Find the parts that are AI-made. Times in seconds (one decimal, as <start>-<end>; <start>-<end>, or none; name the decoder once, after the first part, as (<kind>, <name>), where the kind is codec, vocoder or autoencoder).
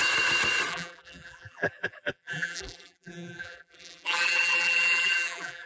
0.7-5.7 (vocoder, BigVGAN v2)